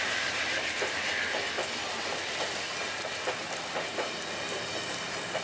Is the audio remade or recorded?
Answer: recorded